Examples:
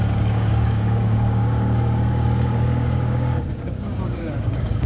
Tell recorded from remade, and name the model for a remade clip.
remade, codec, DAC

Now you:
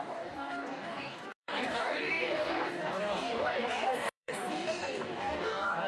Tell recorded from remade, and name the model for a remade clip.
remade, codec, DAC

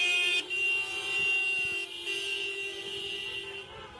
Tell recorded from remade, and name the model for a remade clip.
recorded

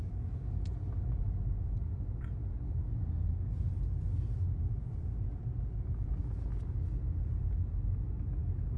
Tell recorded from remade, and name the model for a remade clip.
recorded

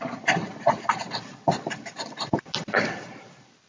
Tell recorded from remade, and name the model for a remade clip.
remade, vocoder, BigVGAN v2